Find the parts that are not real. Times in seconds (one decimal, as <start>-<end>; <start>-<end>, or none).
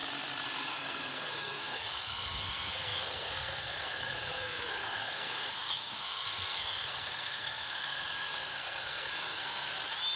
0.6-9.7